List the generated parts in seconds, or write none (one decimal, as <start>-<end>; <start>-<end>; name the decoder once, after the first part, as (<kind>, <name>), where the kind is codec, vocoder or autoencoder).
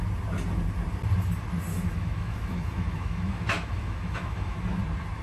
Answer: 1.7-4.8 (autoencoder, DAC-VAE)